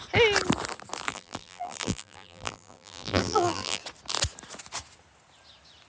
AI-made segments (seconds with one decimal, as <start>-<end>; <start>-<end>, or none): 1.1-3.8